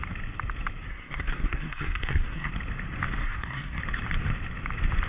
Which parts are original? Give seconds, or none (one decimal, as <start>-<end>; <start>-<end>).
0.0-0.9; 2.5-3.2; 3.8-5.1